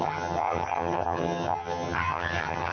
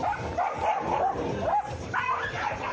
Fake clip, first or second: first